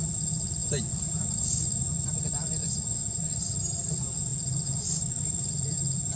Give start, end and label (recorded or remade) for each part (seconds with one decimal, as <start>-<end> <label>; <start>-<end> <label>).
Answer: 0.0-2.6 recorded; 2.6-3.3 remade; 3.3-6.2 recorded

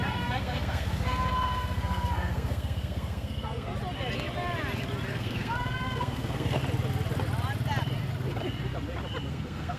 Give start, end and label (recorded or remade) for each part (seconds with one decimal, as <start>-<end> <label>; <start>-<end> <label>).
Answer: 0.0-3.7 remade; 3.7-5.1 recorded; 5.1-6.6 remade; 6.6-9.3 recorded; 9.3-9.8 remade

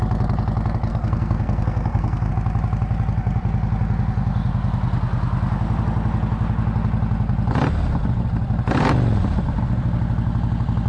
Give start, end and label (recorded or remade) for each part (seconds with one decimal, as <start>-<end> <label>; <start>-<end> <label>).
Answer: 0.0-0.9 recorded; 0.9-2.3 remade; 2.3-10.9 recorded

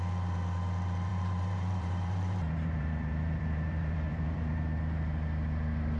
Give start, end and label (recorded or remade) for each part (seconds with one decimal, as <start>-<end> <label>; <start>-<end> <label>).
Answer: 0.0-1.1 recorded; 1.1-4.6 remade; 4.6-6.0 recorded